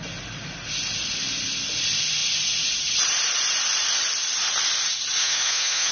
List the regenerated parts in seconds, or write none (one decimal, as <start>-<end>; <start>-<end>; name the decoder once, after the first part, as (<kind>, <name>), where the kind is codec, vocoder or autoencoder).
5.2-5.9 (autoencoder, DAC-VAE)

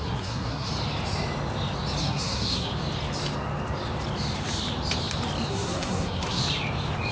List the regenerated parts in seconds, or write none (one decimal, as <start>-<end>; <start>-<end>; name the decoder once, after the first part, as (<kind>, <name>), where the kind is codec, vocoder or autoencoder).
0.0-0.7 (codec, SNAC); 2.0-2.7; 5.5-6.4

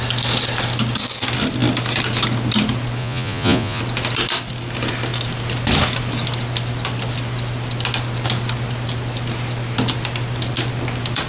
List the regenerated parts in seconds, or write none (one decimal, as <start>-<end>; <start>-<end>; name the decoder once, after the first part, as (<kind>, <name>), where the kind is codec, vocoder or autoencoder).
3.0-3.8 (vocoder, Vocos)

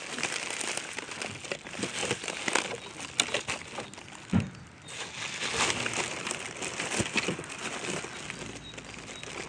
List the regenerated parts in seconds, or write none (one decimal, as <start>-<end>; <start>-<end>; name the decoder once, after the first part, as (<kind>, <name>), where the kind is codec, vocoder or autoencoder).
none

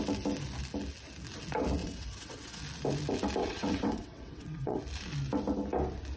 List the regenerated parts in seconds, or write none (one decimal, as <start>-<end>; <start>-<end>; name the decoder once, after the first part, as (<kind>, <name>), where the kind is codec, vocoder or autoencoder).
1.8-2.6 (vocoder, WaveNeXt); 3.4-4.8